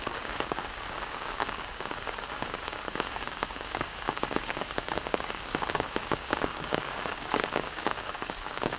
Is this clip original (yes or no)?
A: no